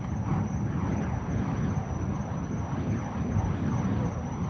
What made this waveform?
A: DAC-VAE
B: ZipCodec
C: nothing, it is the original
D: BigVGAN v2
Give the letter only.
C